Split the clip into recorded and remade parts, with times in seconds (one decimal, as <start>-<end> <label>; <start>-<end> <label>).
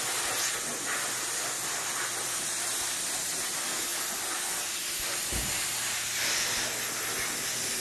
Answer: 0.0-7.8 recorded